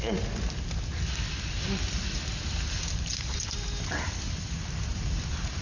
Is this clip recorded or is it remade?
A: recorded